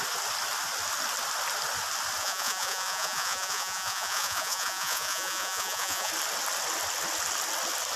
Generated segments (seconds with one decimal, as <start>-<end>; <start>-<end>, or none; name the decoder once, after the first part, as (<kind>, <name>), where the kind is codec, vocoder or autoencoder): 2.2-6.1 (vocoder, Vocos)